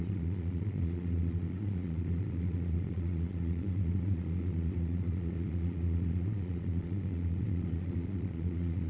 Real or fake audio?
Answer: fake